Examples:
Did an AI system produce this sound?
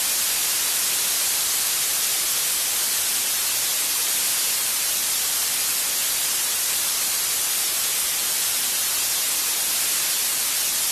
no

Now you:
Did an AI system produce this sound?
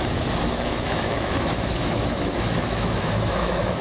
yes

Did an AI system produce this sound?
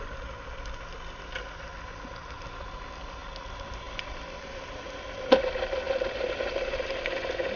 no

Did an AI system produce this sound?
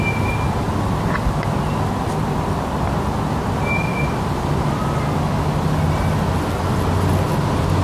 no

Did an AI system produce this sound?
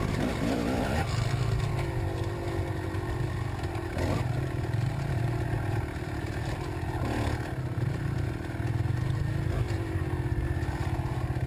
no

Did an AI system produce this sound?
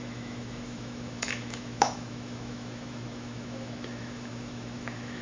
yes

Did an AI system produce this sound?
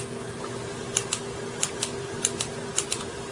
no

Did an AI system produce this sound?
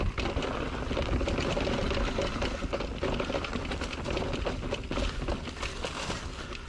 no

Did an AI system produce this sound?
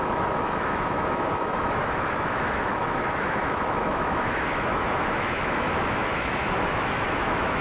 yes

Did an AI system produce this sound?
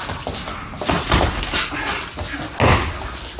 no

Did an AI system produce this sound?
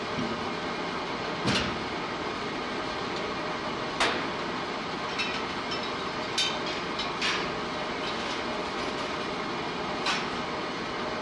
no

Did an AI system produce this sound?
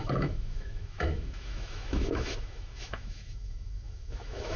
yes